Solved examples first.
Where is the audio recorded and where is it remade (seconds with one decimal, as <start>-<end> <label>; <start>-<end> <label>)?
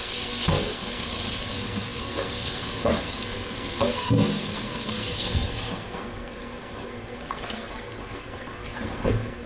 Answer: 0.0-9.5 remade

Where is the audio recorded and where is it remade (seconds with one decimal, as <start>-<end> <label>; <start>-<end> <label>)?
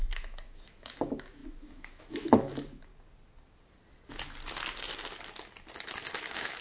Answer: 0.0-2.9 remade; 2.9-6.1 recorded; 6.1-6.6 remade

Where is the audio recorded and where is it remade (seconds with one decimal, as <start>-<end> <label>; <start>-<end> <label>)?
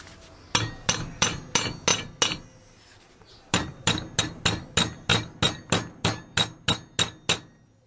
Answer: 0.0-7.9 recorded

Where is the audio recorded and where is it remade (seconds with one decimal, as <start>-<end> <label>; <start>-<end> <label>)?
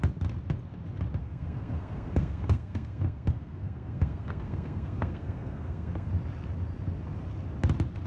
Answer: 0.0-1.2 recorded; 1.2-6.1 remade; 6.1-8.1 recorded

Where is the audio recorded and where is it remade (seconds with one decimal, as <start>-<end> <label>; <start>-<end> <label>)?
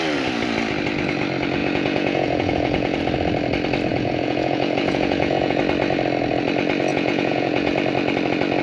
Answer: 0.0-1.6 recorded; 1.6-3.0 remade; 3.0-3.9 recorded; 3.9-5.6 remade; 5.6-6.9 recorded; 6.9-7.7 remade; 7.7-8.6 recorded